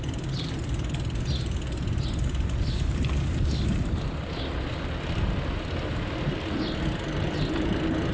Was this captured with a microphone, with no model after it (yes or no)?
yes